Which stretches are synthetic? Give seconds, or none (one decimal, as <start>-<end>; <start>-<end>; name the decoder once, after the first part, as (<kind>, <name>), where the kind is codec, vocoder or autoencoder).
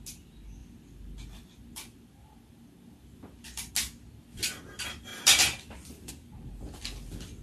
0.6-3.7 (vocoder, BigVGAN v2); 5.1-6.1